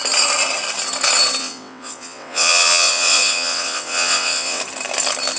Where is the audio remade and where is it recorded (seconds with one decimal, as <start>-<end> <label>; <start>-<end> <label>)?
0.0-1.4 recorded; 1.4-4.6 remade; 4.6-5.4 recorded